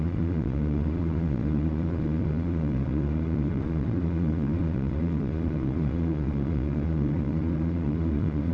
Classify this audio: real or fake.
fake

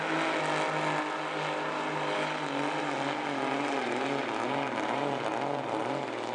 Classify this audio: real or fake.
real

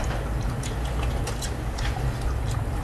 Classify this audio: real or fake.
real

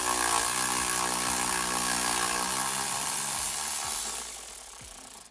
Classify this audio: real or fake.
real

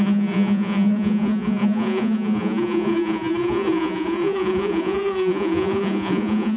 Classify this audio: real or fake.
fake